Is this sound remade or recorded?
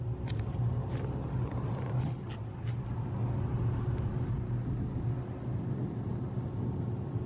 recorded